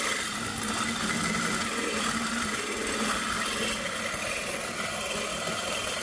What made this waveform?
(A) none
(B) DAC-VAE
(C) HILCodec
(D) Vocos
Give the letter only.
A